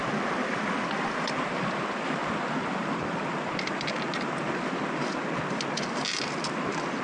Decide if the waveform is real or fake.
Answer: real